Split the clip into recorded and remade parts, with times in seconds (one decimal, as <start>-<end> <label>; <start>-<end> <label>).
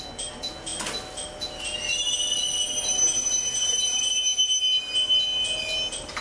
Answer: 0.0-6.2 recorded